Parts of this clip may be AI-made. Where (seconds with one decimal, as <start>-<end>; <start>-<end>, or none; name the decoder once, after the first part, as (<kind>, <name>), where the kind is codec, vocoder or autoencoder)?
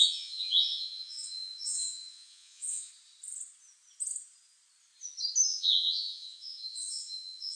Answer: 0.0-2.9 (vocoder, Vocos); 5.5-7.6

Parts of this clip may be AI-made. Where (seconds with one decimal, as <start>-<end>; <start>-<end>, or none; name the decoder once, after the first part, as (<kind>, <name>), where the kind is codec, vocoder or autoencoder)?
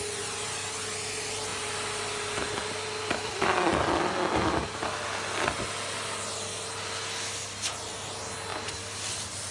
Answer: none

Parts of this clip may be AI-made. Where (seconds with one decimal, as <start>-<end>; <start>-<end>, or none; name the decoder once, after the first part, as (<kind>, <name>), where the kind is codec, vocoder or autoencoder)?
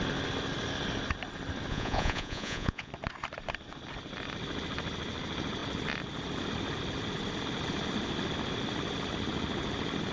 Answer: 1.7-2.9 (vocoder, Vocos)